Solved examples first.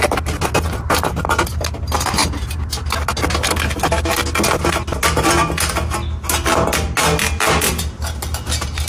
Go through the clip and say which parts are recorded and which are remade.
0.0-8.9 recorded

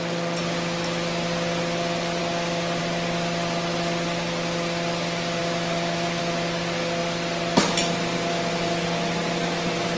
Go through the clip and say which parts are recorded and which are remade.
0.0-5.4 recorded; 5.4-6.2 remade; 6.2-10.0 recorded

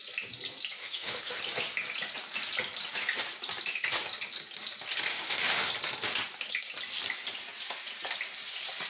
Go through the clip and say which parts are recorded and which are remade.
0.0-0.8 recorded; 0.8-1.4 remade; 1.4-5.1 recorded; 5.1-5.7 remade; 5.7-8.9 recorded

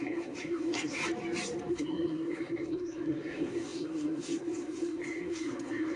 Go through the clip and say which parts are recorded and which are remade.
0.0-1.0 remade; 1.0-1.7 recorded; 1.7-6.0 remade